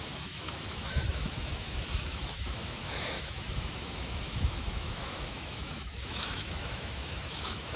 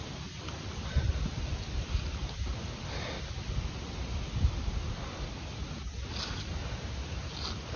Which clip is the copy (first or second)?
first